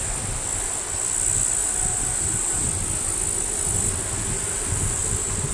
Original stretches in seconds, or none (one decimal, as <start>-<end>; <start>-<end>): 0.0-5.5

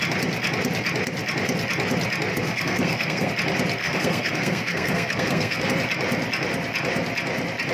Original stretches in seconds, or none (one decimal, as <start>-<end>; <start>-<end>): 0.0-2.3; 3.3-3.8; 5.7-7.7

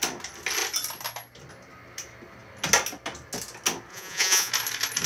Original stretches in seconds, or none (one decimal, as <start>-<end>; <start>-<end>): 0.0-3.9; 4.5-5.1

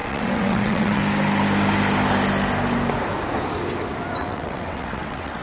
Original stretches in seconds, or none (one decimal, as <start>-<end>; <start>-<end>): 1.0-4.2

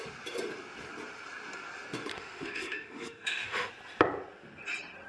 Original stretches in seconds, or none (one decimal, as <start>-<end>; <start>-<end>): 0.0-2.1; 3.7-5.1

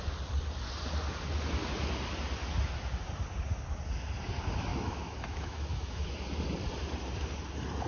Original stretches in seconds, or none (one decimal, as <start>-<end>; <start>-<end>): 0.0-4.7; 6.1-7.9

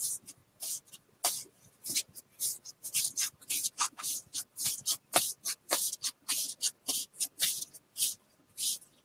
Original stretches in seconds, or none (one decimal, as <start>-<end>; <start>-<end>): 0.0-9.0